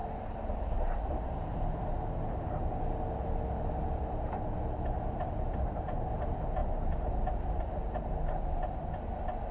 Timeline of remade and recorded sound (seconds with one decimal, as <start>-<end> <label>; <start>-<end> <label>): 0.0-9.5 recorded